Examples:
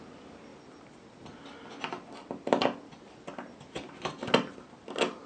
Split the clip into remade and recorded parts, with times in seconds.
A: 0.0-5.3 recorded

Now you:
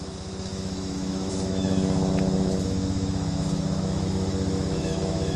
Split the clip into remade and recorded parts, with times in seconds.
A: 0.0-5.4 remade

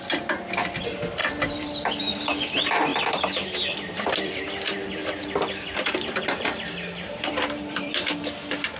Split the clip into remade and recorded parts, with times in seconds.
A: 0.0-1.2 recorded; 1.2-2.0 remade; 2.0-2.9 recorded; 2.9-7.9 remade; 7.9-8.8 recorded

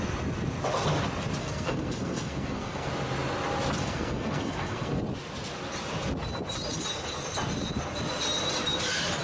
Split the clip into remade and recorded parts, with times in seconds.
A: 0.0-1.4 recorded; 1.4-2.9 remade; 2.9-3.8 recorded; 3.8-5.0 remade; 5.0-9.2 recorded